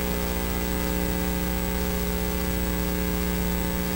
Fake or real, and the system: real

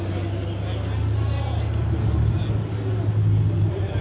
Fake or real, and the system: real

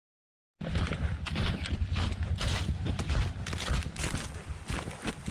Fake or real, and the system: real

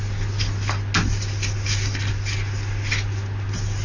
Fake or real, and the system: real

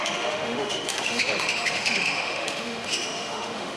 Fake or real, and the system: fake, autoencoder, DAC-VAE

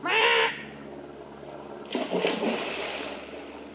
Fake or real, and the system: real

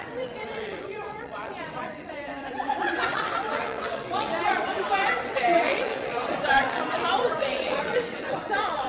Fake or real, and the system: fake, vocoder, WaveNeXt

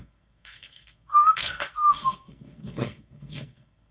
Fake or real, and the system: fake, codec, SNAC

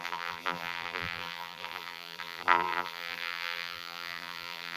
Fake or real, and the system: fake, vocoder, BigVGAN v2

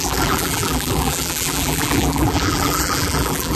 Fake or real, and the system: fake, vocoder, BigVGAN v2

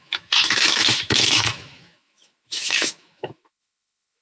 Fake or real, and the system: fake, autoencoder, DAC-VAE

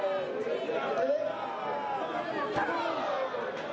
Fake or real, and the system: real